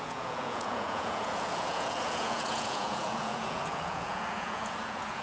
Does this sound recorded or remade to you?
remade